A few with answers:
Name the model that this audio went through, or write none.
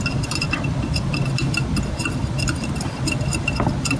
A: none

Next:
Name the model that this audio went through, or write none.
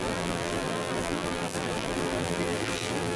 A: vocoder, BigVGAN v2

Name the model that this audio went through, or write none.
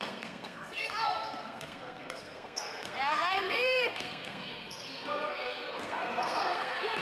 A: codec, SNAC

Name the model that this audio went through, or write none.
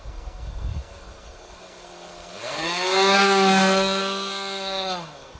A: codec, SNAC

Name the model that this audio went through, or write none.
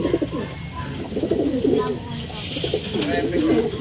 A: none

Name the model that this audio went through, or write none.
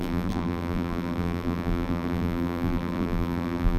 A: vocoder, BigVGAN v2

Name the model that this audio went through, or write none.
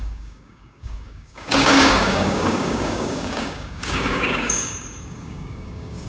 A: codec, DAC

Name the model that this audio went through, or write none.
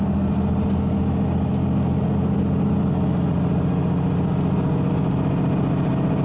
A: none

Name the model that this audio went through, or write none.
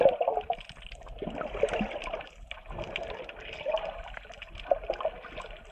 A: none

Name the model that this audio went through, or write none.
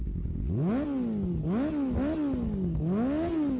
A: none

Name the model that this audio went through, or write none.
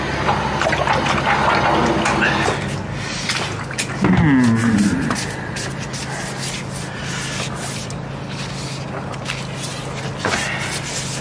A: none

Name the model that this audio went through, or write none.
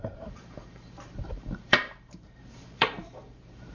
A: vocoder, BigVGAN v2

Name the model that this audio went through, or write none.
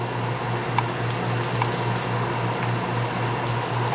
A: none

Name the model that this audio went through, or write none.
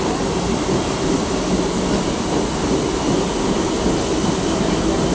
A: none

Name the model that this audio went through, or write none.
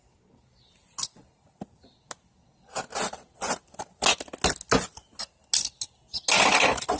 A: none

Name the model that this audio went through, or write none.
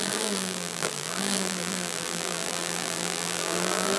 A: vocoder, BigVGAN v2